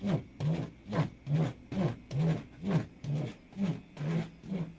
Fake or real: real